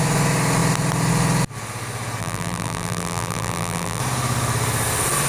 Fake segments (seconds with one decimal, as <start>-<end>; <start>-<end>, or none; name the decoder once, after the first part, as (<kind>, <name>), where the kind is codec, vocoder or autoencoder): 2.2-4.0 (vocoder, BigVGAN v2)